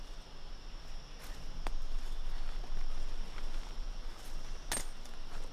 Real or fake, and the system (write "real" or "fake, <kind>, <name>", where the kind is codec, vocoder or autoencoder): real